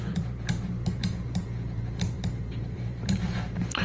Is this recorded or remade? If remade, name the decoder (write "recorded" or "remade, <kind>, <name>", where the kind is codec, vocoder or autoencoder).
remade, vocoder, BigVGAN v2